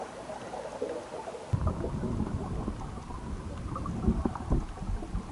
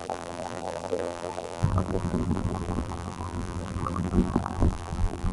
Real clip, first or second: first